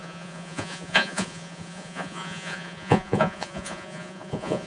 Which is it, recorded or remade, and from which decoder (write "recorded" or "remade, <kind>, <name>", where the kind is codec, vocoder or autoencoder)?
remade, vocoder, Vocos